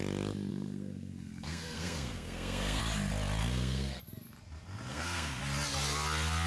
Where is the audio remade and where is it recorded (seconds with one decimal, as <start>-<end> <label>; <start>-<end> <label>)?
0.0-0.5 recorded; 0.5-2.8 remade; 2.8-3.4 recorded; 3.4-4.0 remade; 4.0-4.9 recorded; 4.9-5.4 remade; 5.4-6.5 recorded